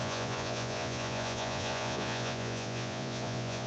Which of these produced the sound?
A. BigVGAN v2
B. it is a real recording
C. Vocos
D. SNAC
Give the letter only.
C